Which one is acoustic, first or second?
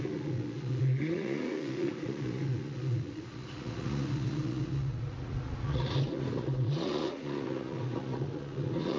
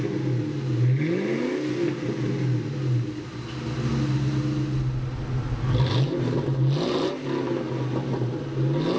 second